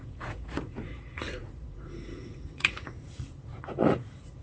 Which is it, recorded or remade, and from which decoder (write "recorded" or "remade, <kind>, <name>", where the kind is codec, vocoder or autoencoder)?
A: remade, vocoder, Vocos